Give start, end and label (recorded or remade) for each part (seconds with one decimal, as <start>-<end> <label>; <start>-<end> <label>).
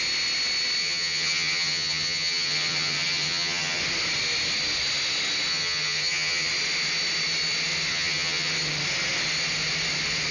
0.0-0.8 recorded; 0.8-3.8 remade; 3.8-5.5 recorded; 5.5-6.5 remade; 6.5-7.9 recorded; 7.9-8.5 remade; 8.5-10.3 recorded